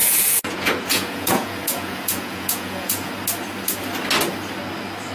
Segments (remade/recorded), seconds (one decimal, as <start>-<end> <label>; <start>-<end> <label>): 0.0-3.1 remade; 3.1-5.1 recorded